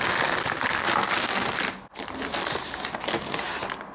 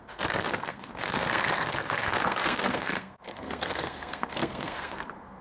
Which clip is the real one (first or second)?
first